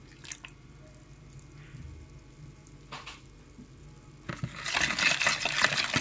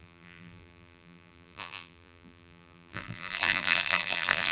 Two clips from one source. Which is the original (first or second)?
first